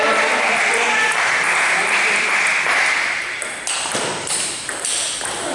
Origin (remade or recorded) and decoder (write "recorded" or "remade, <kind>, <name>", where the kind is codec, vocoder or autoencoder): recorded